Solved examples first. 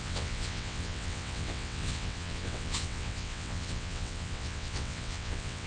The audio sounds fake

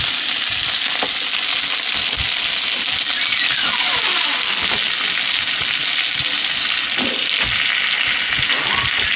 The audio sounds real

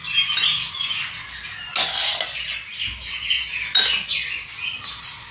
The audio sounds real